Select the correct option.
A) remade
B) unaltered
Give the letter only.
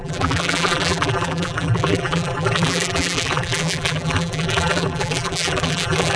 A